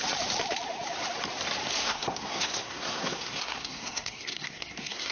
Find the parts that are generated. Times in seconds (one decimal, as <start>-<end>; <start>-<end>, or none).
1.8-5.1